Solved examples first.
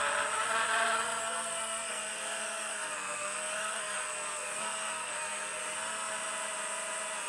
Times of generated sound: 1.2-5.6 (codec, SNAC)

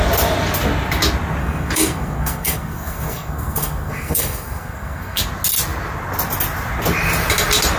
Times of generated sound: 1.4-5.2 (codec, SNAC)

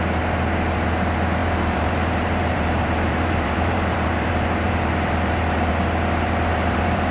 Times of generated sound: 1.4-5.7 (vocoder, BigVGAN v2); 6.5-7.1

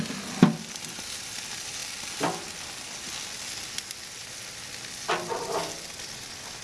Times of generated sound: none

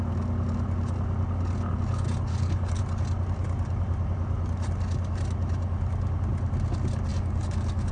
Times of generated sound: 2.3-2.8 (codec, DAC); 7.1-7.9

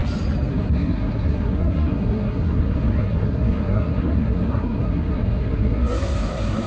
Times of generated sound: 0.5-6.7 (codec, SNAC)

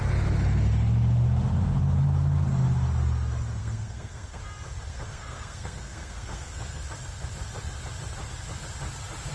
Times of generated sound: 3.6-4.4 (codec, SNAC); 4.9-6.8

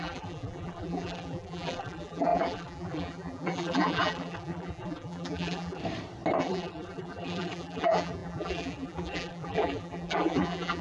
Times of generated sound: 0.0-5.8 (vocoder, BigVGAN v2); 6.4-10.8